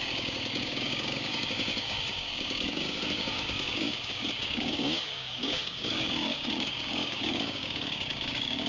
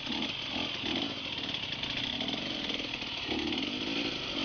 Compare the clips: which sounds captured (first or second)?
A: second